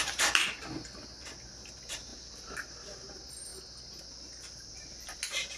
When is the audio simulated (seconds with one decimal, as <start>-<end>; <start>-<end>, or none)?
none